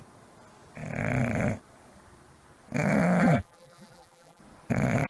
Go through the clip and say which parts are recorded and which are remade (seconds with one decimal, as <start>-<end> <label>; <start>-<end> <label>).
0.0-3.2 recorded; 3.2-4.4 remade; 4.4-5.1 recorded